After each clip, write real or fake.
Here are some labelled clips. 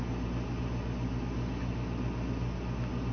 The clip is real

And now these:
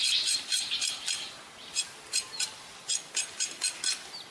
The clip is real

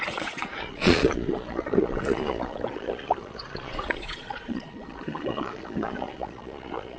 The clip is fake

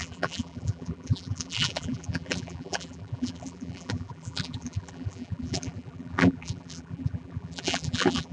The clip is fake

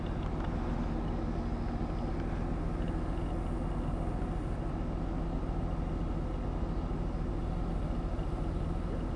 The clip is real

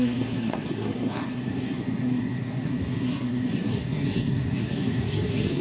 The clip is fake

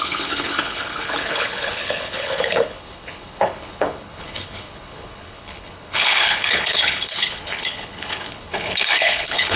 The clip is fake